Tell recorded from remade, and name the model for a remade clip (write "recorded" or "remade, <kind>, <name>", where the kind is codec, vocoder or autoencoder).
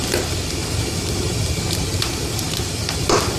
recorded